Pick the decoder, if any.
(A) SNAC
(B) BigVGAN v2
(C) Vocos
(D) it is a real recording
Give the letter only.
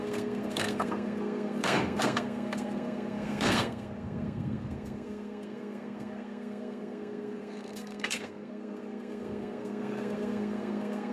A